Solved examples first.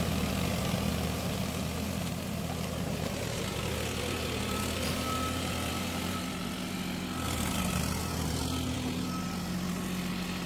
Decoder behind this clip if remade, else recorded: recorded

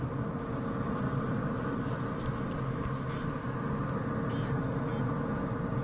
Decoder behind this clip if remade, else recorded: recorded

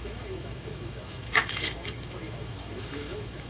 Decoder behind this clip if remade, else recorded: remade, autoencoder, DAC-VAE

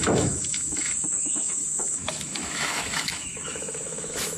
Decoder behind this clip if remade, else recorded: remade, autoencoder, DAC-VAE